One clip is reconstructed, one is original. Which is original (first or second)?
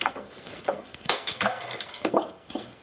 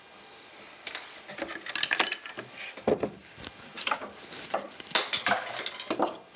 second